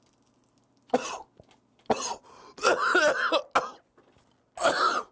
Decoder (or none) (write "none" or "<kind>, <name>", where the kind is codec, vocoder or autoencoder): none